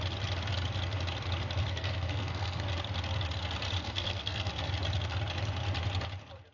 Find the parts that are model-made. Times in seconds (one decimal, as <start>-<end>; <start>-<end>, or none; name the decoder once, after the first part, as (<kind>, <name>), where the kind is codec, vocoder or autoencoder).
1.6-2.6 (codec, SNAC); 3.8-4.7